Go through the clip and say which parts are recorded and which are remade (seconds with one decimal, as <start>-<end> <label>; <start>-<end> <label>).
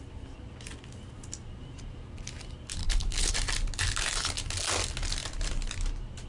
0.0-2.8 recorded; 2.8-3.3 remade; 3.3-6.3 recorded